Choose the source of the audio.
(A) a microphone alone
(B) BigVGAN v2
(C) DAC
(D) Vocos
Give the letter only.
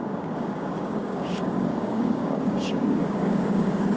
C